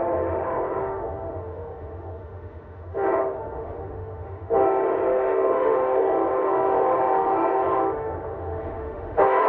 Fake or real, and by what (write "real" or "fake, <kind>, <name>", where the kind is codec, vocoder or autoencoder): fake, autoencoder, DAC-VAE